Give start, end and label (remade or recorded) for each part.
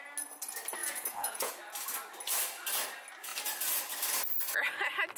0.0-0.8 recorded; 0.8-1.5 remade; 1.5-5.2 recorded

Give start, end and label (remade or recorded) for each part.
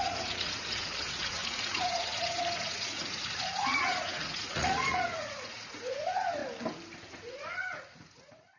0.0-6.4 remade; 6.4-7.1 recorded; 7.1-8.6 remade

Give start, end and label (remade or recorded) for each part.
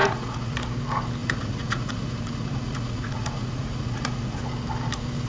0.0-0.5 remade; 0.5-1.2 recorded; 1.2-4.4 remade; 4.4-5.3 recorded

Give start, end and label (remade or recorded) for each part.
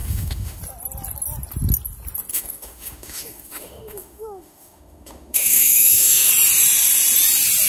0.0-0.6 remade; 0.6-2.3 recorded; 2.3-6.3 remade; 6.3-7.7 recorded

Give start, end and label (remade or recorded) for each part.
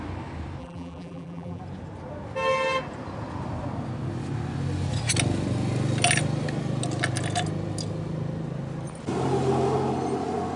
0.0-0.6 recorded; 0.6-1.6 remade; 1.6-10.6 recorded